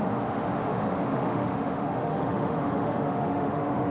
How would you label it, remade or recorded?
remade